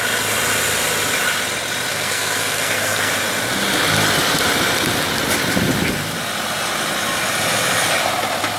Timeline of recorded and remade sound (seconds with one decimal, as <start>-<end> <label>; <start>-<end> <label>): 0.0-1.9 recorded; 1.9-3.1 remade; 3.1-8.6 recorded